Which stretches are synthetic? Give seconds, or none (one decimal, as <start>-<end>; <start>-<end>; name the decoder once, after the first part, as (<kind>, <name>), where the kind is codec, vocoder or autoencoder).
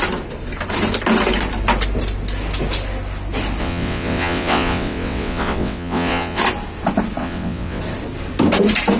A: 3.6-6.4 (vocoder, WaveNeXt); 7.2-7.8